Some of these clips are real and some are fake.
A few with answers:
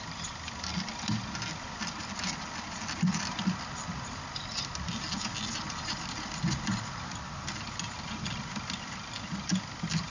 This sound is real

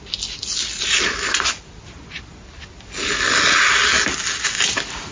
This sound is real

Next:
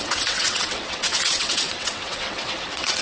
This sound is fake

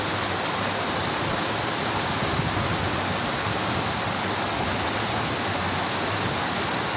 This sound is real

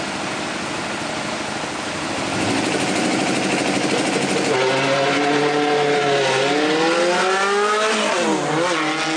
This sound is real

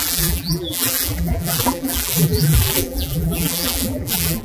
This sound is fake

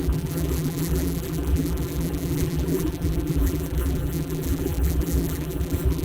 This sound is fake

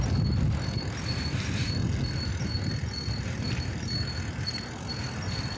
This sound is real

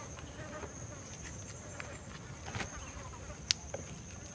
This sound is real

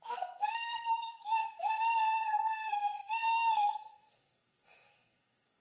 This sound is fake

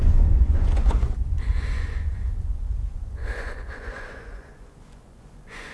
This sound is fake